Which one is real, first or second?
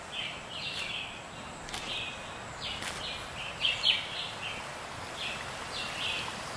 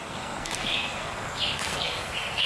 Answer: first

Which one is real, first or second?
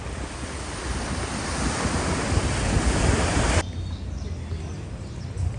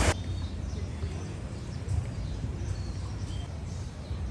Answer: first